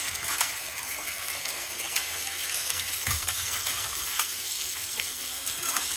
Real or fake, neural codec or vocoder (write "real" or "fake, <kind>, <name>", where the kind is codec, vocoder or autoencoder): fake, codec, SNAC